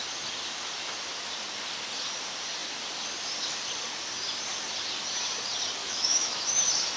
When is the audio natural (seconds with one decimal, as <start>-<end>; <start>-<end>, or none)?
0.0-5.8; 6.6-7.0